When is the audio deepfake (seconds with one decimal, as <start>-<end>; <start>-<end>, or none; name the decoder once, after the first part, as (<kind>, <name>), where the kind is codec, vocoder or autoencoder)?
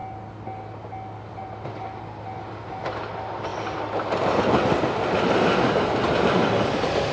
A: none